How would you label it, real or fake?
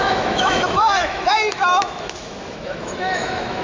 fake